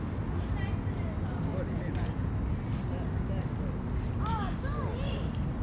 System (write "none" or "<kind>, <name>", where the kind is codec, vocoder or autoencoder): none